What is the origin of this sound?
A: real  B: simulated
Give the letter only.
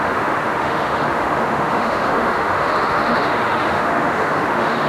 B